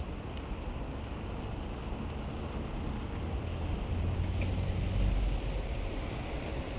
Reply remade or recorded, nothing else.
recorded